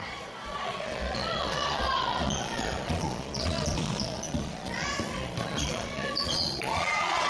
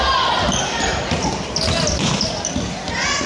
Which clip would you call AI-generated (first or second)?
first